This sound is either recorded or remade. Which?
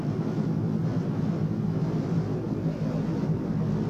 recorded